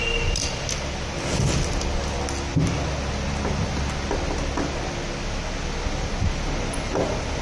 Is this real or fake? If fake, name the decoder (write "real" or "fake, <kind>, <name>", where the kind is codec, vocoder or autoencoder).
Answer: real